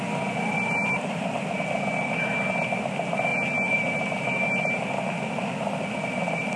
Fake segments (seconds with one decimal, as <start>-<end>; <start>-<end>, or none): 0.8-1.3; 3.3-4.8